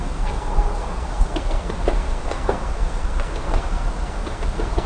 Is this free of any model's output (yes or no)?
no